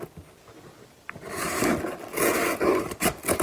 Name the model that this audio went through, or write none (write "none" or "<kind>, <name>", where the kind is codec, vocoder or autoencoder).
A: none